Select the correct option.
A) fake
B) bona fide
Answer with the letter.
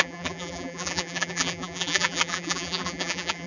A